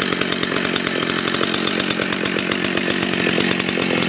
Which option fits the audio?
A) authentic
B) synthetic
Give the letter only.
A